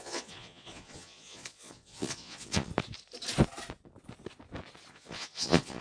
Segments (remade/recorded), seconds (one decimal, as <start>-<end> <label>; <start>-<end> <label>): 0.0-2.7 remade; 2.7-4.9 recorded; 4.9-5.8 remade